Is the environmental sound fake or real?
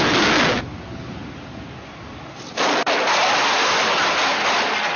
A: real